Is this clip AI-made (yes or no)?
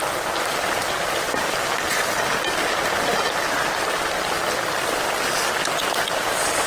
no